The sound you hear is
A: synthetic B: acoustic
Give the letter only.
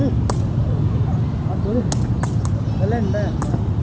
B